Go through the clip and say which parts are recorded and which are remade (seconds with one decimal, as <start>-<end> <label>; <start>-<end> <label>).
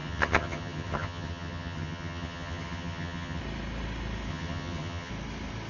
0.0-3.4 remade; 3.4-4.3 recorded; 4.3-5.1 remade; 5.1-5.7 recorded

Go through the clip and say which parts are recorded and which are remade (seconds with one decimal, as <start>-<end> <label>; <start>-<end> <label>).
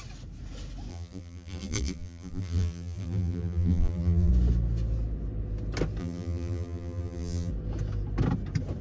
0.0-0.9 recorded; 0.9-4.3 remade; 4.3-6.0 recorded; 6.0-7.5 remade; 7.5-8.8 recorded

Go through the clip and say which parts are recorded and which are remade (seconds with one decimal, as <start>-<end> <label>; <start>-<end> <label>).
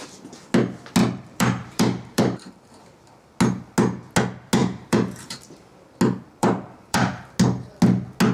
0.0-1.0 recorded; 1.0-2.8 remade; 2.8-4.6 recorded; 4.6-5.7 remade; 5.7-6.4 recorded; 6.4-7.1 remade; 7.1-8.3 recorded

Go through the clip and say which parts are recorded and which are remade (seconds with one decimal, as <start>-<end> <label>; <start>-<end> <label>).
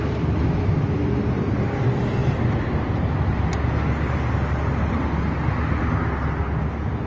0.0-7.1 recorded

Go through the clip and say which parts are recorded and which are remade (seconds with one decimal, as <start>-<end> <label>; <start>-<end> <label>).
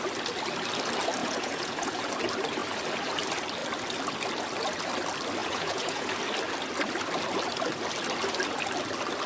0.0-1.2 recorded; 1.2-2.1 remade; 2.1-5.4 recorded; 5.4-6.1 remade; 6.1-9.3 recorded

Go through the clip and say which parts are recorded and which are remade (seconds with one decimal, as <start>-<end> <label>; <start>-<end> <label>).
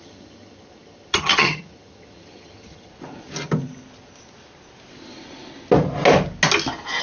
0.0-2.9 remade; 2.9-7.0 recorded